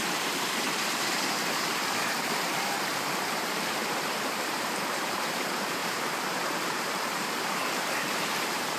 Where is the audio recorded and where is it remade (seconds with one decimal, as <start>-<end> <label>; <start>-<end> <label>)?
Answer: 0.0-8.8 remade